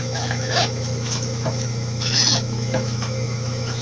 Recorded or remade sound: remade